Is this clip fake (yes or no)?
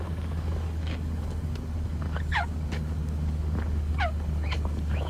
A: yes